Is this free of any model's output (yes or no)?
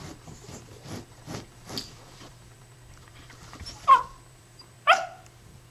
no